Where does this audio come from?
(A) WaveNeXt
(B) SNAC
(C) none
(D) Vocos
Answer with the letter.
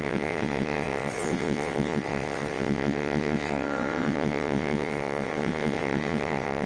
A